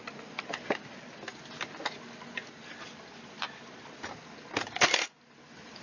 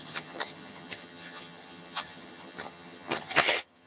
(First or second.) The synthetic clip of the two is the second